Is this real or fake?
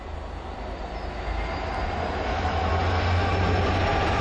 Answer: real